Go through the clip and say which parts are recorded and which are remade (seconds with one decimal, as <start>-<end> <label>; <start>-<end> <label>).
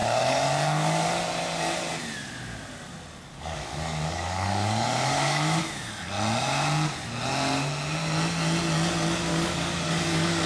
0.0-1.1 remade; 1.1-3.3 recorded; 3.3-5.6 remade; 5.6-9.3 recorded; 9.3-10.5 remade